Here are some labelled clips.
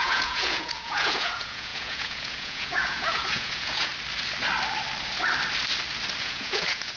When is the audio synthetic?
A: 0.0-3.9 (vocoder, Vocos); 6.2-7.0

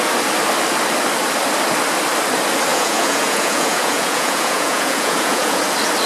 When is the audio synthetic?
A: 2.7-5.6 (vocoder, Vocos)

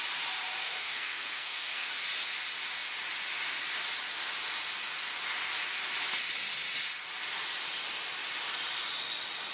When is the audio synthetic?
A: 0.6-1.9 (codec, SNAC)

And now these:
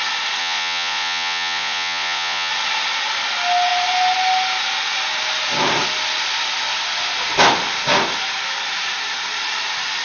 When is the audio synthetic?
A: 0.4-2.5 (vocoder, Vocos)

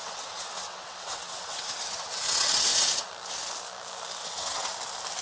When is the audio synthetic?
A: 0.0-3.1 (vocoder, WaveNeXt); 4.2-4.7

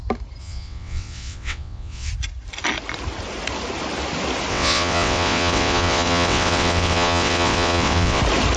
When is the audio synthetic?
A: 0.4-2.1 (vocoder, WaveNeXt); 4.5-8.2